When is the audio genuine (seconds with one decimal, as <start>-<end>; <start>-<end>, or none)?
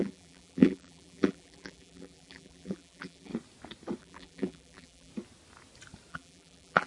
3.3-4.0; 5.1-6.1